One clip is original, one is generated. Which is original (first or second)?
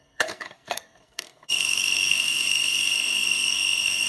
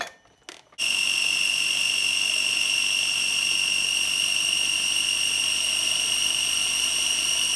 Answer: second